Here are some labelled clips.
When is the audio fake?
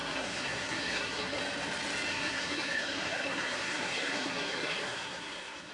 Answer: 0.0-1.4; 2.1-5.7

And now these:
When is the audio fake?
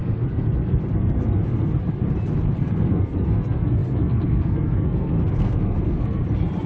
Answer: 0.0-1.7; 2.6-6.2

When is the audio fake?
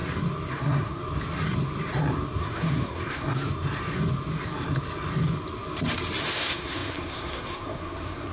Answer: 0.5-1.0; 2.4-3.5; 6.2-8.3